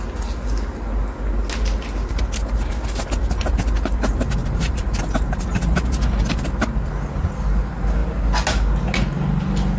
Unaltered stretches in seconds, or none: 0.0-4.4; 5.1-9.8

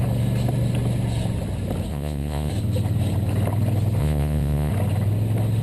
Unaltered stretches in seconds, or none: 0.0-1.9; 2.5-4.0; 4.7-5.6